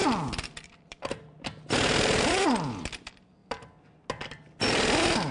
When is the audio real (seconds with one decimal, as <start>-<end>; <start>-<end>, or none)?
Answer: 0.0-5.3